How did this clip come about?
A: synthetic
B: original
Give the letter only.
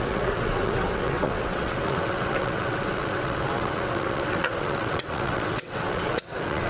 A